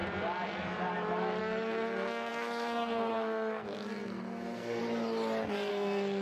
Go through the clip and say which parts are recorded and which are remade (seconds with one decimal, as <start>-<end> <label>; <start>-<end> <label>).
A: 0.0-1.4 recorded; 1.4-4.8 remade; 4.8-5.7 recorded; 5.7-6.2 remade